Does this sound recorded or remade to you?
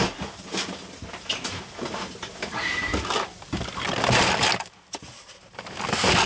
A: recorded